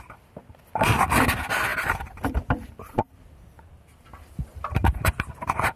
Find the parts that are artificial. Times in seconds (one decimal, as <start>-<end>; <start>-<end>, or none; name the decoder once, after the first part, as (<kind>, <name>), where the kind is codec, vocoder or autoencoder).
1.7-5.1 (vocoder, BigVGAN v2)